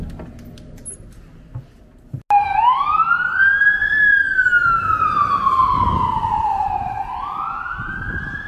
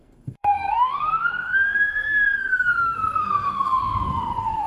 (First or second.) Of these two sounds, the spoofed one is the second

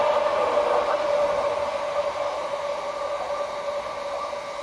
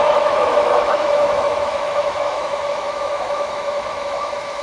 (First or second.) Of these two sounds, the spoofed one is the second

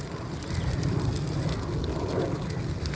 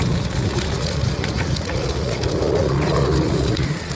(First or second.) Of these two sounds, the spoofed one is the second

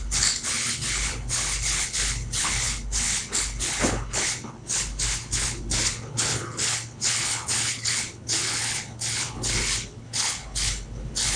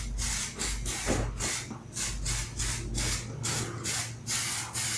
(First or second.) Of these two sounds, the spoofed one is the first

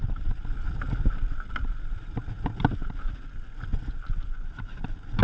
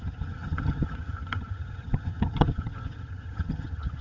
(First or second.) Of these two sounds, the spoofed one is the second